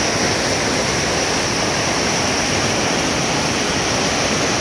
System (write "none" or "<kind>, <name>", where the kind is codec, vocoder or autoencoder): none